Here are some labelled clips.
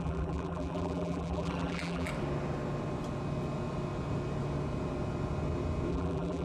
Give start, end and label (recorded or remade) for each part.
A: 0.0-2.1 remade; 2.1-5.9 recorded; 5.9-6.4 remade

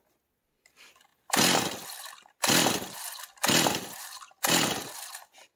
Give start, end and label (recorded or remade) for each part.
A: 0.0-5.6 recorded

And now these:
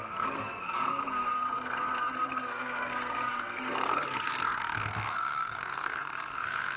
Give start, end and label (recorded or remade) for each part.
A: 0.0-6.8 remade

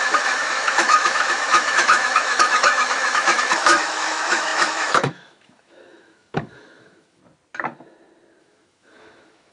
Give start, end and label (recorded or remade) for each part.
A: 0.0-7.2 remade; 7.2-8.4 recorded; 8.4-9.5 remade